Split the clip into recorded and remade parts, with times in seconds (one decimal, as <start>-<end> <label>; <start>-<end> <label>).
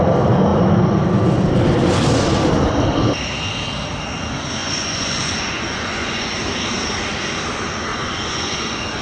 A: 0.0-4.6 recorded; 4.6-6.4 remade; 6.4-7.9 recorded; 7.9-9.0 remade